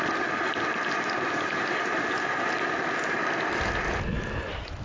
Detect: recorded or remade recorded